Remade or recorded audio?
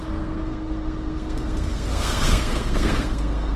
remade